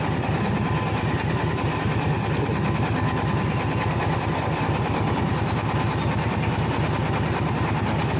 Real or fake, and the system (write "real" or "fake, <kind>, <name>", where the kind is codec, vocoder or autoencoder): real